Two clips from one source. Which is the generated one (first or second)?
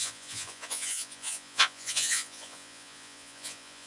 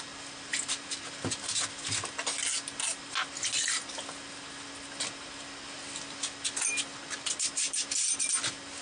first